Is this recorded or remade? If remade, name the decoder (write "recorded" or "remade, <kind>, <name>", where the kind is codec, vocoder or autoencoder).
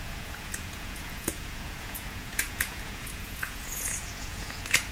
remade, vocoder, Vocos